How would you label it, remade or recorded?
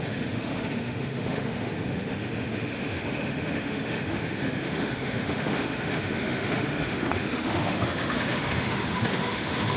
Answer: remade